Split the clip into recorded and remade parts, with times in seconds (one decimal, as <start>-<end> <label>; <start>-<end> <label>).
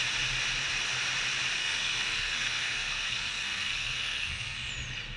0.0-1.6 recorded; 1.6-4.7 remade; 4.7-5.2 recorded